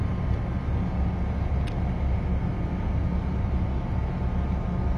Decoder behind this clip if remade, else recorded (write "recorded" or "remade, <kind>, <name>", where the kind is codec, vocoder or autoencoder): recorded